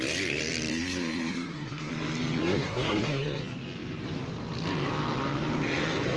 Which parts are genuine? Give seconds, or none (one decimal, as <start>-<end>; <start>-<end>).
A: 0.0-0.7; 1.9-2.4; 3.4-6.2